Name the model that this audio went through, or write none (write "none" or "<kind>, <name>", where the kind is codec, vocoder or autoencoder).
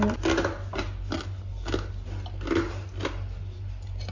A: none